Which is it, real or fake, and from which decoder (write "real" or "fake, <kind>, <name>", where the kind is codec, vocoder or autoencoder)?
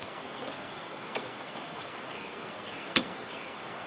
fake, codec, SNAC